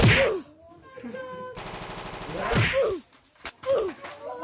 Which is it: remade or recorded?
recorded